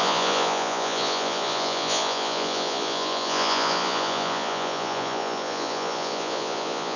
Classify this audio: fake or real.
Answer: fake